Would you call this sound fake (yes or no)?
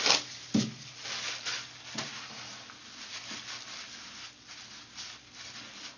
no